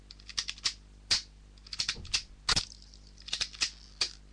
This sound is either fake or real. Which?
real